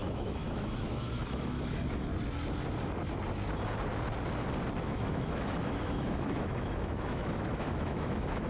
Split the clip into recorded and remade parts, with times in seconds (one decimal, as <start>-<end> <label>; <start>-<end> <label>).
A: 0.0-2.1 remade; 2.1-4.8 recorded; 4.8-8.5 remade